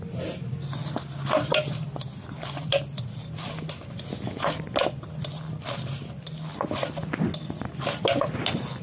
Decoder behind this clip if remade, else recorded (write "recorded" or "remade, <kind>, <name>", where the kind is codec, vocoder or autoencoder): recorded